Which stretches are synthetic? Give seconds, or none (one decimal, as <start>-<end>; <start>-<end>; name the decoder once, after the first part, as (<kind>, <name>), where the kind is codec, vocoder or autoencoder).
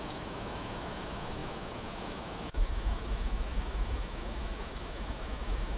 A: 0.0-5.8 (autoencoder, DAC-VAE)